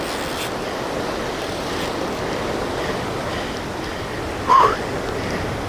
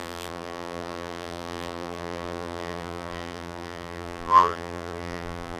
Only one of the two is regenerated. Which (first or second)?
second